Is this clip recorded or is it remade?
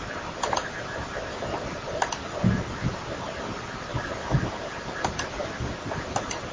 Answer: recorded